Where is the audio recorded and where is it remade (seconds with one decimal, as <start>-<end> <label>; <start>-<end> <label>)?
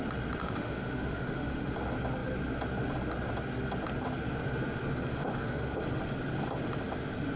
0.0-0.4 recorded; 0.4-1.7 remade; 1.7-5.1 recorded; 5.1-5.7 remade; 5.7-7.4 recorded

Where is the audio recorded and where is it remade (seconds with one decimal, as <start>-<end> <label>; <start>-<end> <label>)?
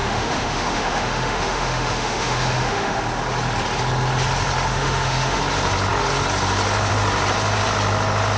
0.0-3.0 remade; 3.0-4.7 recorded; 4.7-5.4 remade; 5.4-8.4 recorded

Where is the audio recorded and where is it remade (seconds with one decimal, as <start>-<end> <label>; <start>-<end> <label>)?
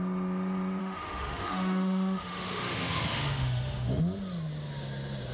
0.0-0.8 recorded; 0.8-4.0 remade; 4.0-5.3 recorded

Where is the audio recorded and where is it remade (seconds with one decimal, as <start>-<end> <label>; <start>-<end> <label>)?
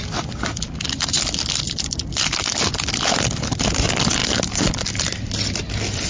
0.0-6.1 recorded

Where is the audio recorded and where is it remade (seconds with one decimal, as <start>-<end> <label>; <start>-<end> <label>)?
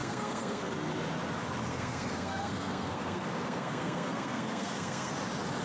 0.0-0.7 remade; 0.7-1.7 recorded; 1.7-5.1 remade; 5.1-5.6 recorded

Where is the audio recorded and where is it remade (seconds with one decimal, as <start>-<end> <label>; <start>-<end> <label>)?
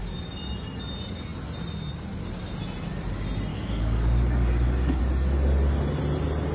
0.0-3.5 recorded; 3.5-5.0 remade; 5.0-6.5 recorded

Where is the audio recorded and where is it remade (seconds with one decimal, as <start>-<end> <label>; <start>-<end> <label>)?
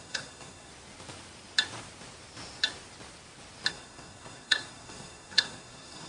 0.0-0.7 remade; 0.7-3.7 recorded; 3.7-6.1 remade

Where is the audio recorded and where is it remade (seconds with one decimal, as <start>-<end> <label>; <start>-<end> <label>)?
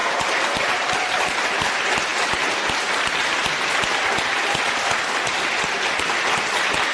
0.0-1.5 remade; 1.5-6.9 recorded